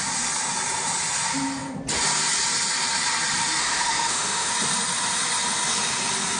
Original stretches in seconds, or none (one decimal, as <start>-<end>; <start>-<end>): 0.0-3.6; 4.5-6.4